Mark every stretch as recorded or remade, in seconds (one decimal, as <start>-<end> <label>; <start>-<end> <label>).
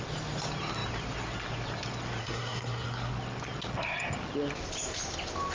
0.0-2.2 recorded; 2.2-3.1 remade; 3.1-5.5 recorded